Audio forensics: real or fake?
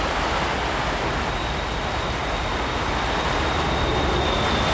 real